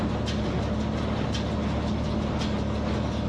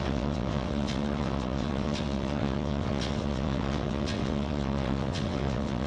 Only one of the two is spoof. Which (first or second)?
second